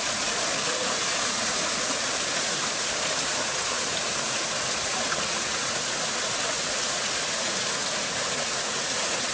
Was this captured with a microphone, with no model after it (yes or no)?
no